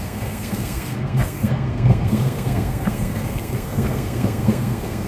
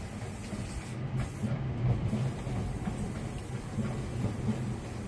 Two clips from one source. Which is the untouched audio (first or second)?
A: second